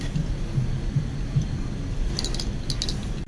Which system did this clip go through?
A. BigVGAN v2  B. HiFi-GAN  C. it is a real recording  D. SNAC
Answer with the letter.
C